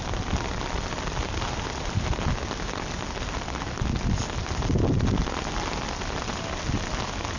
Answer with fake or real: real